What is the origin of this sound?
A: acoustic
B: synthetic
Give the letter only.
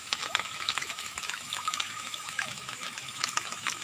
B